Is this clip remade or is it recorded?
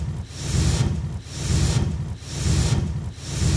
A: recorded